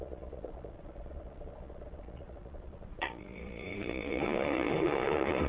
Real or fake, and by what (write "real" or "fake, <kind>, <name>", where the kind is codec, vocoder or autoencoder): fake, vocoder, Vocos